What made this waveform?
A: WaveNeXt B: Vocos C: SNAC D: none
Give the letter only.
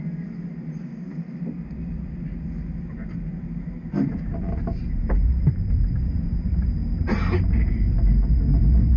D